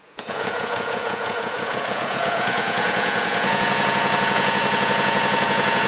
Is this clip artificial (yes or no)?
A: yes